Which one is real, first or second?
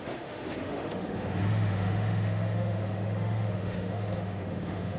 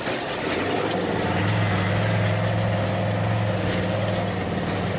second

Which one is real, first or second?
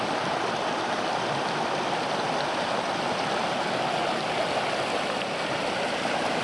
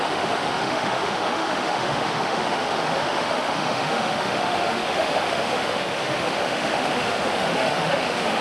first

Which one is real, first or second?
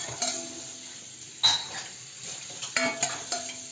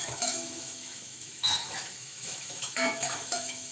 first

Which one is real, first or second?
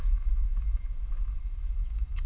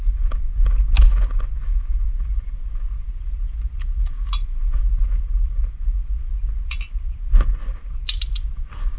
second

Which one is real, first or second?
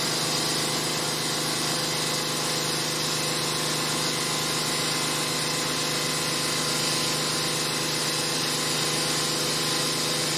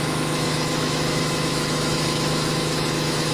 first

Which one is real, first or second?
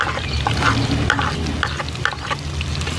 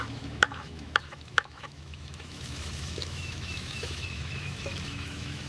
first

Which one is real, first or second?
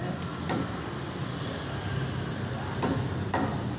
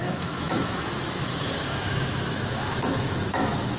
first